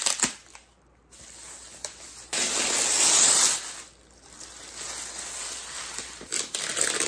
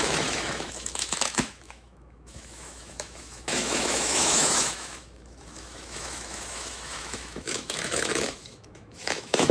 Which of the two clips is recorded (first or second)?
first